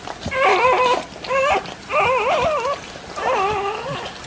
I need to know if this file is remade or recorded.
recorded